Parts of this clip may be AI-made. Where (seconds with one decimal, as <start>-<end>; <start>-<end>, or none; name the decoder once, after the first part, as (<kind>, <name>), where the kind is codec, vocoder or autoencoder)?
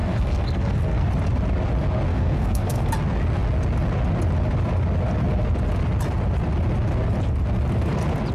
0.0-1.1 (codec, SNAC); 2.1-2.9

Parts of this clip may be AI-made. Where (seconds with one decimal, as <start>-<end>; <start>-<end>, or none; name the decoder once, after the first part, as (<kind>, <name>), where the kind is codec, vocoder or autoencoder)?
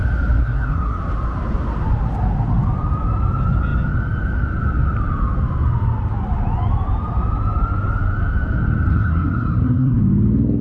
0.4-1.0 (codec, SNAC); 8.9-10.0